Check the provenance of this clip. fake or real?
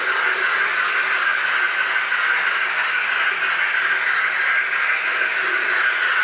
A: real